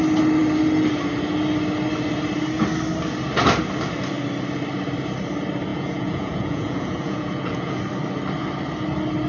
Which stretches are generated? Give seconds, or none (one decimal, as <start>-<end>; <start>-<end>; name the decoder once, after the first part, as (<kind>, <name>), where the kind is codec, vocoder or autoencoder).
5.7-7.8 (vocoder, Vocos)

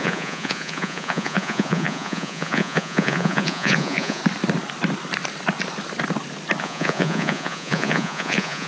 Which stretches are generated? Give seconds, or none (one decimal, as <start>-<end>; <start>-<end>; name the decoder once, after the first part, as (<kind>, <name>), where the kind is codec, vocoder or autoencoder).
0.0-4.2 (vocoder, Vocos); 6.6-8.7

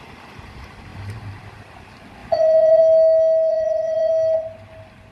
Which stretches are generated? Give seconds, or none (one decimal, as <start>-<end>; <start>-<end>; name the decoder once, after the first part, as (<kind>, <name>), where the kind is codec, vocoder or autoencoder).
2.2-2.8 (vocoder, Vocos); 3.5-4.1

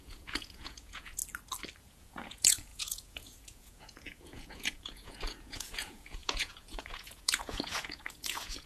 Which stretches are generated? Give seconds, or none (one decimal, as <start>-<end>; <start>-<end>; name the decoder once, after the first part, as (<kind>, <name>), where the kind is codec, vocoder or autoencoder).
0.0-1.2 (vocoder, Vocos); 1.8-8.7

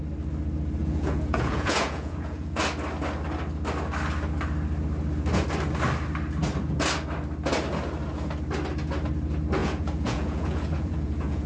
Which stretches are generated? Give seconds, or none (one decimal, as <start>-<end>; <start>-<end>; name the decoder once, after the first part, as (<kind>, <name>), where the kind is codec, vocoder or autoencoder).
0.8-2.6 (vocoder, Vocos); 9.6-11.5